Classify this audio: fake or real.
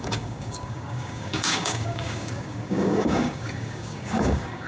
fake